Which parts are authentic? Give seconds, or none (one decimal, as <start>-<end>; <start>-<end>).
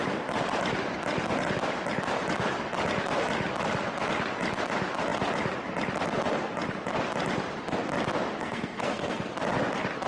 0.0-8.4; 9.3-10.1